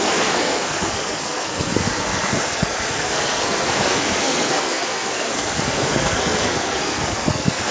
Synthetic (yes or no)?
yes